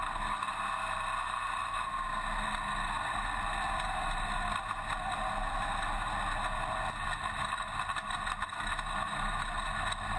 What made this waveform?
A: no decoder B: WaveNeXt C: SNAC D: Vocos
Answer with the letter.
A